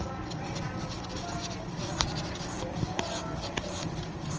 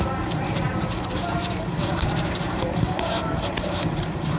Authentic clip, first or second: first